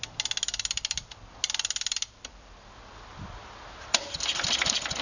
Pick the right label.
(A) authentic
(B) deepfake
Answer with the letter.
A